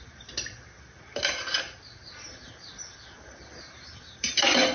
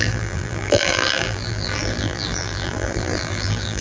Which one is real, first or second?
first